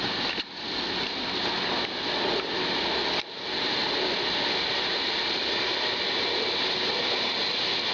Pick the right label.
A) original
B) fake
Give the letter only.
A